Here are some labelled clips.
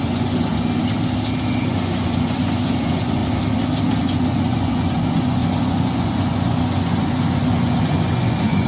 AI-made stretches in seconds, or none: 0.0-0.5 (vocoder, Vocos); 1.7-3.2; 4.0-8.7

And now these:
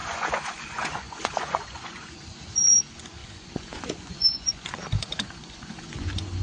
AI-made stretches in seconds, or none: 0.0-6.4 (vocoder, Vocos)